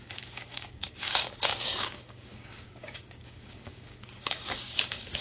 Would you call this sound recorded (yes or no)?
no